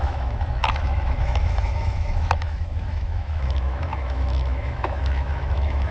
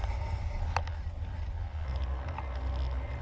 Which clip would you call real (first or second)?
second